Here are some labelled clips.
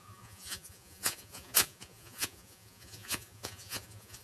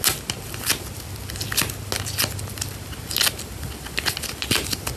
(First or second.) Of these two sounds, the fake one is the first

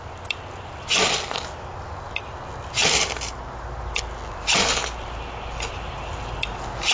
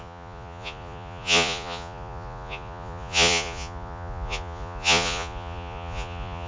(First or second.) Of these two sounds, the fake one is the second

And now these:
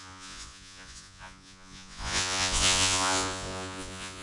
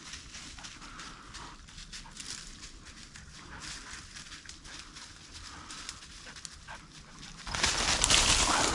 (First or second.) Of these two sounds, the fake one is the first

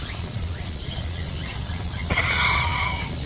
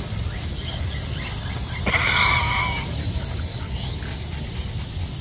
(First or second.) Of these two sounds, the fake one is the first